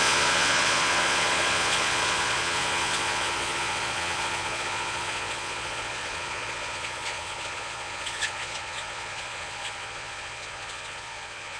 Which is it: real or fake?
fake